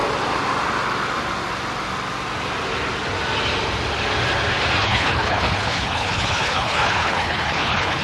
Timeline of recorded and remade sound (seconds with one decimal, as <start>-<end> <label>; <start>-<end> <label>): 0.0-4.8 recorded; 4.8-8.0 remade